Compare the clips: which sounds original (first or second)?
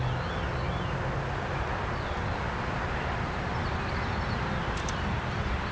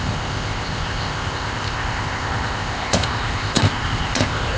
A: first